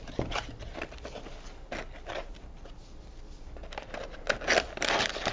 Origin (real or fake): real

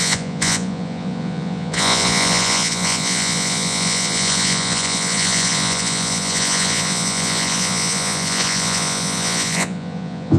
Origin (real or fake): fake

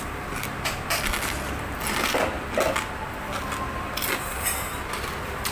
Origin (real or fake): real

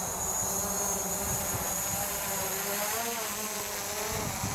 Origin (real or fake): real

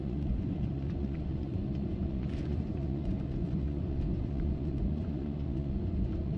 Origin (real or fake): fake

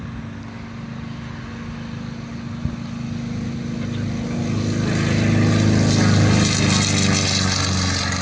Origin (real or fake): real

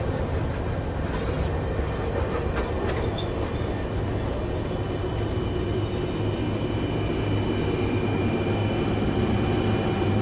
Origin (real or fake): real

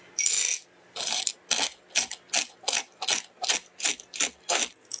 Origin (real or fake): real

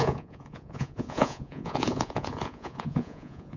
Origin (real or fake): fake